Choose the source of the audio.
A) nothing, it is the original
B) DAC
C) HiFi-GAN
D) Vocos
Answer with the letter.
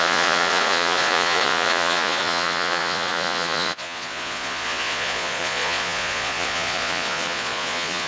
D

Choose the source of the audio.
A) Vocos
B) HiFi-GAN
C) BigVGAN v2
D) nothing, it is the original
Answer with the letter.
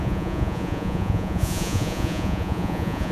A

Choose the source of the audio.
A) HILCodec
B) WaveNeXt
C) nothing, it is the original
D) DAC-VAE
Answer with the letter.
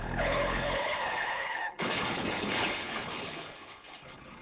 A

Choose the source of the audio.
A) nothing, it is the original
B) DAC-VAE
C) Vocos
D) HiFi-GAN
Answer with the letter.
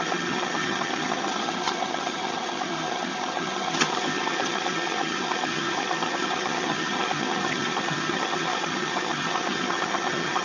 D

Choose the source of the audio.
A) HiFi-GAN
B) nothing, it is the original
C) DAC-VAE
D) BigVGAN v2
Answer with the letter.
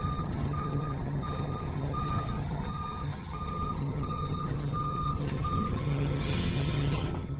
A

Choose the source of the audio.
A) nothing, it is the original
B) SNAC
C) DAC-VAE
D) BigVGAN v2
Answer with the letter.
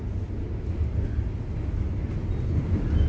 A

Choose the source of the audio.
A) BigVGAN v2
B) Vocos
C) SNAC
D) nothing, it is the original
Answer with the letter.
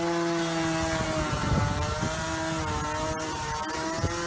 D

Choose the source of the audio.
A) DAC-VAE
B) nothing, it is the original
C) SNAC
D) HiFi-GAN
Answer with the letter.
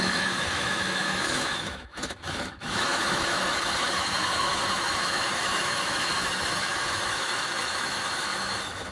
A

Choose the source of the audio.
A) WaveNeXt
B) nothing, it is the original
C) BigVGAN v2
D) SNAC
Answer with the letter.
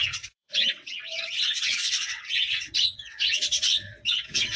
A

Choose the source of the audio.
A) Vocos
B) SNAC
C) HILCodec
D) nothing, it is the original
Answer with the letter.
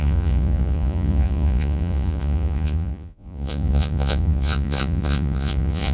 A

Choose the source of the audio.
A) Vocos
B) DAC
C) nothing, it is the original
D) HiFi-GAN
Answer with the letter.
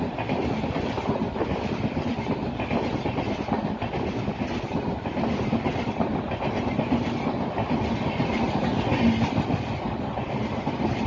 C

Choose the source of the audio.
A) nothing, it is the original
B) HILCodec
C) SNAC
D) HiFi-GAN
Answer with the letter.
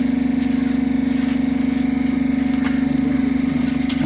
A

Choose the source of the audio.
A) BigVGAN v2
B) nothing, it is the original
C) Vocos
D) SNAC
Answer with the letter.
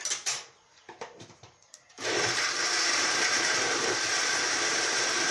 A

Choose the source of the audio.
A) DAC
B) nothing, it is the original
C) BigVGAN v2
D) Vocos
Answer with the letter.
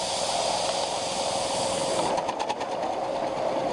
B